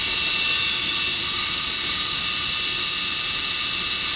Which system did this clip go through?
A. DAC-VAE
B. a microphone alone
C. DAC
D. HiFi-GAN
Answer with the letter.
B